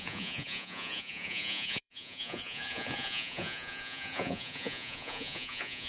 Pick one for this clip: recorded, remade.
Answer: remade